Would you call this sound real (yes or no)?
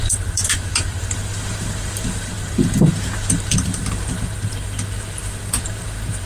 no